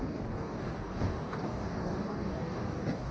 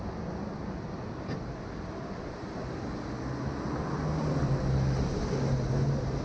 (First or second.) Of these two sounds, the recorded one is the second